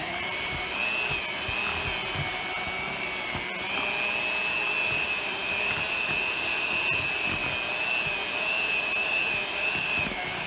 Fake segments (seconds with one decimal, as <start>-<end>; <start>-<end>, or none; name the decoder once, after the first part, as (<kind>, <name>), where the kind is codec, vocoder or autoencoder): 0.0-0.8 (vocoder, BigVGAN v2); 4.7-7.4; 8.4-10.5